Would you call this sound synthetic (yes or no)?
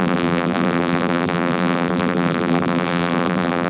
yes